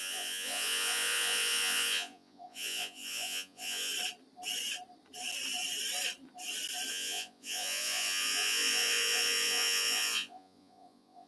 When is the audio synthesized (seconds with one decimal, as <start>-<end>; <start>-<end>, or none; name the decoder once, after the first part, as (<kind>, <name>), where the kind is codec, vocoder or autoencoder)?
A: 0.0-3.9 (vocoder, Vocos); 6.9-11.3